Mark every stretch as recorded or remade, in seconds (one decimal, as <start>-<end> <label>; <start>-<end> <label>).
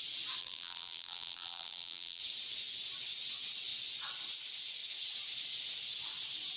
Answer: 0.0-0.4 recorded; 0.4-2.2 remade; 2.2-6.6 recorded